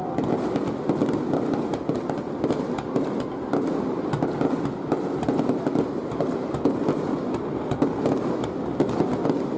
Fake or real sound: real